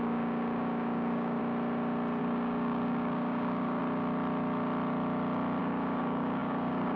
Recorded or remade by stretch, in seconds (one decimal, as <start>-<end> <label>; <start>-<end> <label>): 0.0-1.4 remade; 1.4-2.2 recorded; 2.2-3.8 remade; 3.8-5.6 recorded; 5.6-7.0 remade